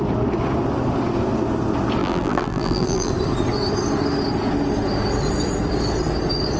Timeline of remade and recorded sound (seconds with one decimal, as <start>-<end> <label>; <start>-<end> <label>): 0.0-2.0 recorded; 2.0-3.1 remade; 3.1-6.6 recorded